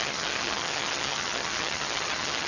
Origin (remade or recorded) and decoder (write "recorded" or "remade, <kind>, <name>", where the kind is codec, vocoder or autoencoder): remade, vocoder, HiFi-GAN